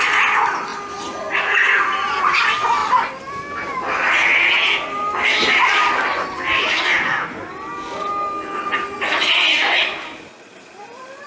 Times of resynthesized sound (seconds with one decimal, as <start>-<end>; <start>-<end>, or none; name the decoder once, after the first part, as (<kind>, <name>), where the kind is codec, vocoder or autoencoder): none